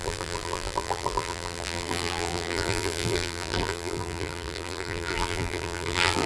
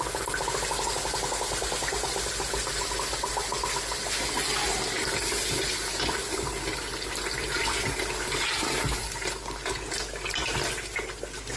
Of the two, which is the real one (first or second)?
second